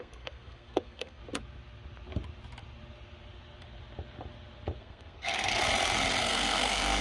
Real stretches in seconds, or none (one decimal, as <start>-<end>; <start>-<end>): 1.2-4.8; 5.5-6.2